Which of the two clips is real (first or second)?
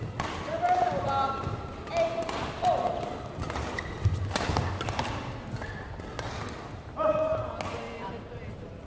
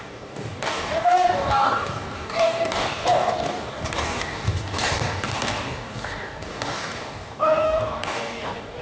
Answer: first